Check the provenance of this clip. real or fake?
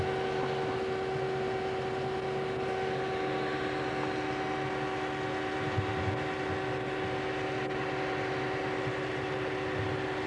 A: real